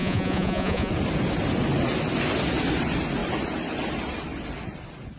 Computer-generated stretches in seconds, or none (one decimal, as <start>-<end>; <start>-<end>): 0.0-0.9